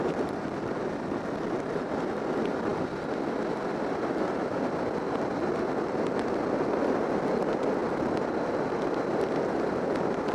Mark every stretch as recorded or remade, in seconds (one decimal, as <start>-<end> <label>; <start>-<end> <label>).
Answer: 0.0-10.3 recorded